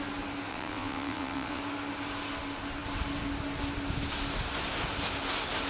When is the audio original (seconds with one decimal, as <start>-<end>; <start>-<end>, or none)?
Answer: 0.0-0.5; 1.6-5.7